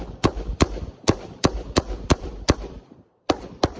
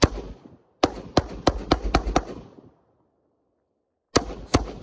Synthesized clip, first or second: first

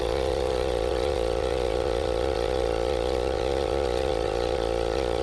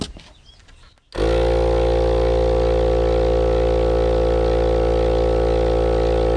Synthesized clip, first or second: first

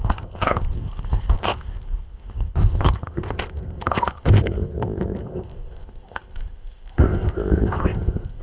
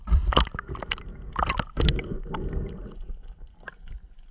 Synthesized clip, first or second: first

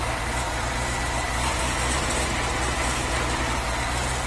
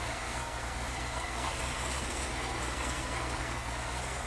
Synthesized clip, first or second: second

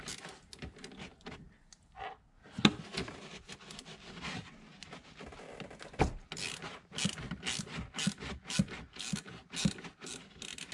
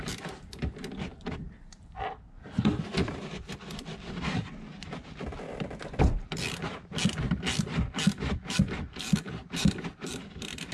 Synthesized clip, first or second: second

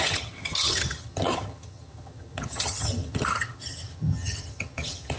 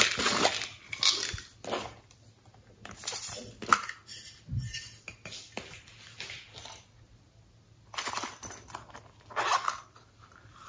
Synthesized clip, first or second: first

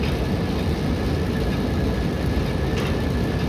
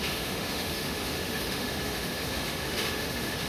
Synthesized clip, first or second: second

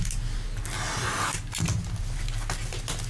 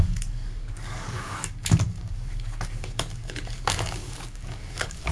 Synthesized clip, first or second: second